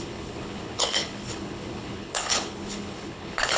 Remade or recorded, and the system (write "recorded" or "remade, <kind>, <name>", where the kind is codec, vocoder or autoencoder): remade, codec, HILCodec